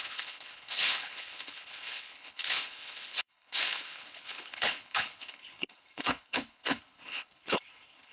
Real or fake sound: fake